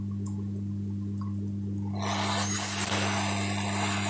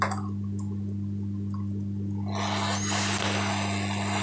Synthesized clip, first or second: first